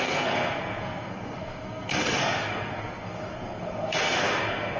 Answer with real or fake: fake